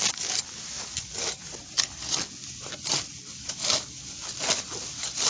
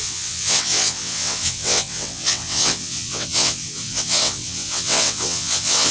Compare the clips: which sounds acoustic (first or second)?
first